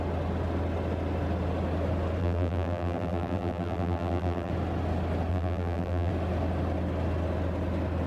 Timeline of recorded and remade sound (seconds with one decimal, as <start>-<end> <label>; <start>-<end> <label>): 0.0-2.2 recorded; 2.2-4.5 remade; 4.5-5.3 recorded; 5.3-6.1 remade; 6.1-8.1 recorded